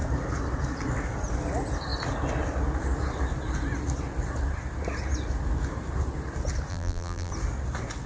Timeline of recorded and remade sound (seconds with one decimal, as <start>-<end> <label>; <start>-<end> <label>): 0.0-6.7 recorded; 6.7-7.3 remade; 7.3-8.1 recorded